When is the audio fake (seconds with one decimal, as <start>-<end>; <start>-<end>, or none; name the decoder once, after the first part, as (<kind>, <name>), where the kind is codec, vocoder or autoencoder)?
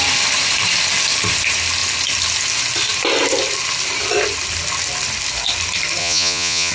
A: 6.0-6.7 (vocoder, Vocos)